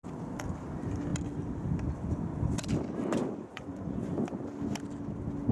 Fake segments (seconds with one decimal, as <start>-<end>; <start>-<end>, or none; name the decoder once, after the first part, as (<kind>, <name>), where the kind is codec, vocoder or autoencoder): 3.5-4.1 (vocoder, Vocos)